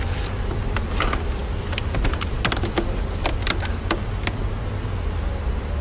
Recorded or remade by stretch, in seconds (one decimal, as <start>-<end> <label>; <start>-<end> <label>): 0.0-5.8 recorded